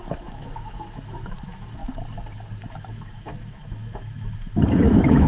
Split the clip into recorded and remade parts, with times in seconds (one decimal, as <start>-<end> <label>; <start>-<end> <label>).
0.0-1.8 remade; 1.8-2.7 recorded; 2.7-5.3 remade